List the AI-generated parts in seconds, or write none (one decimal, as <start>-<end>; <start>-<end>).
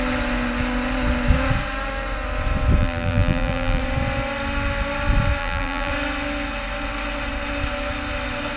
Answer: 2.8-3.8; 5.4-5.9